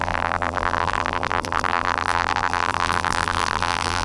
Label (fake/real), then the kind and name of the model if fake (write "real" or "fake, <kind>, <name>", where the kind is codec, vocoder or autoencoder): fake, vocoder, BigVGAN v2